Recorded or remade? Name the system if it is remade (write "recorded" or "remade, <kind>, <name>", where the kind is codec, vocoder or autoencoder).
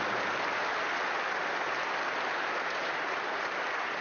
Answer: recorded